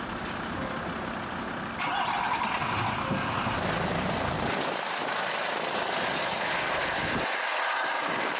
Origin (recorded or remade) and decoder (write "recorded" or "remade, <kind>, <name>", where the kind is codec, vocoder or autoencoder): recorded